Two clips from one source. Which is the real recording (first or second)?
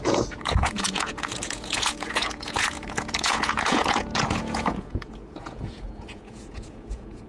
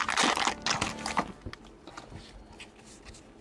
second